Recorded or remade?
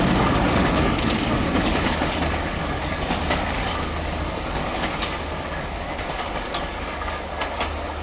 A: remade